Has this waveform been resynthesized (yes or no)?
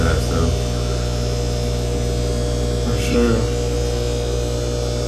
no